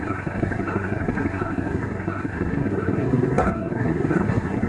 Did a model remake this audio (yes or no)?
yes